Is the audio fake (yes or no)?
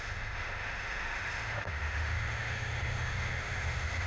yes